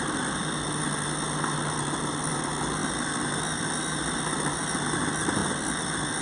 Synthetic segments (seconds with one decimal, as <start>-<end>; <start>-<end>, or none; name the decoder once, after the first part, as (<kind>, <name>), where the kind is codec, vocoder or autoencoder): none